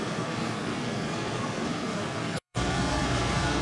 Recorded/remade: remade